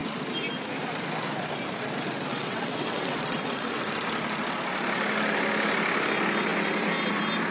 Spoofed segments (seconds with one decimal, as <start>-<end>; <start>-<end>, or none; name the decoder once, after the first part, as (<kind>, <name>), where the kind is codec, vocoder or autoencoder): 2.3-3.8 (vocoder, WaveNeXt)